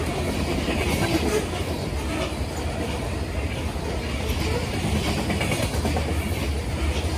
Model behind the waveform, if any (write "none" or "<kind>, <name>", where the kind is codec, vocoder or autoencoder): none